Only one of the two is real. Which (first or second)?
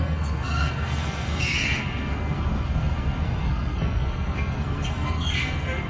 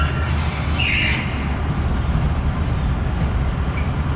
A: second